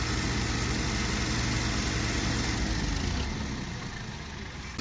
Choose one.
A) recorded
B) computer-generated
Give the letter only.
A